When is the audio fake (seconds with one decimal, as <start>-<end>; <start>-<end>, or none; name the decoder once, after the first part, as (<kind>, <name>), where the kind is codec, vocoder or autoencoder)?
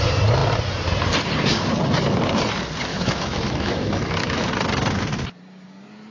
2.9-4.5 (autoencoder, DAC-VAE)